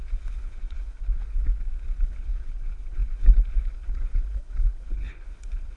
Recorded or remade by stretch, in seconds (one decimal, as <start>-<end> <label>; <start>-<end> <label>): 0.0-1.4 remade; 1.4-2.0 recorded; 2.0-5.8 remade